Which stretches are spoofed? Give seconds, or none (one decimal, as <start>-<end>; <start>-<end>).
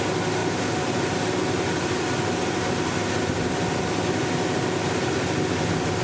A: 0.4-2.6